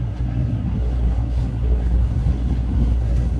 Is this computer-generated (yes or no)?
yes